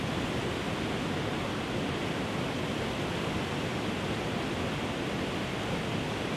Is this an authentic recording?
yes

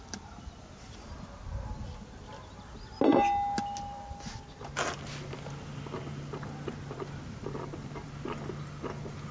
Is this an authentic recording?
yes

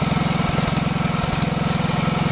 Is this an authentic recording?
yes